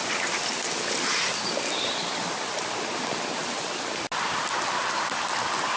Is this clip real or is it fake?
real